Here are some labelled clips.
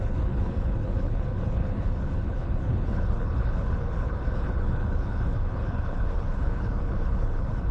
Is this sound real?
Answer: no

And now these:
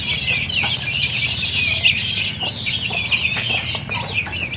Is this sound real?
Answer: yes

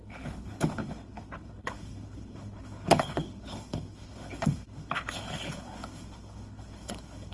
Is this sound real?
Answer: no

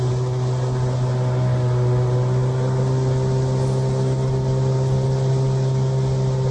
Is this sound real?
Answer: yes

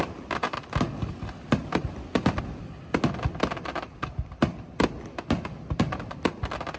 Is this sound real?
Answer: yes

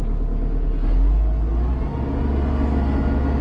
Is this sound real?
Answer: yes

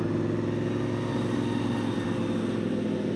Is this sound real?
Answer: yes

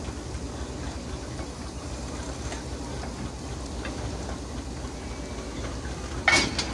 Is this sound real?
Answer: yes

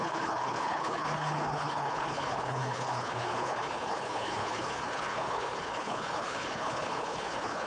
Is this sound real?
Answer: no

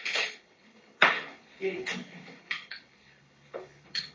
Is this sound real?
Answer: no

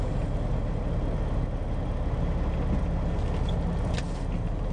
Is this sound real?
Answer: yes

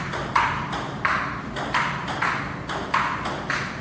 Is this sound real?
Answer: yes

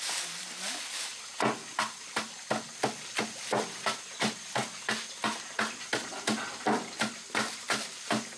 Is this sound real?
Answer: yes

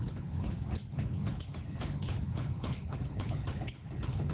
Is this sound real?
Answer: no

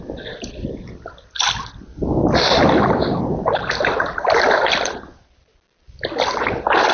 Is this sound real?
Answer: yes